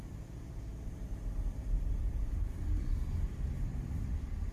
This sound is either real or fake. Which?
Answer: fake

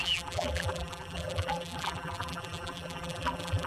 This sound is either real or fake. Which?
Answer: fake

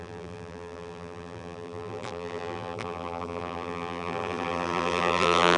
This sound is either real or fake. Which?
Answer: fake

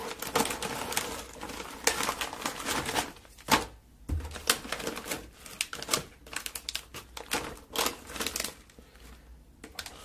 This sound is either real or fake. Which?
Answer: real